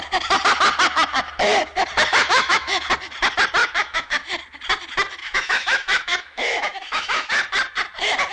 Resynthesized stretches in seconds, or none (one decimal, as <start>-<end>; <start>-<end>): 2.1-2.9; 3.6-4.3; 5.2-7.3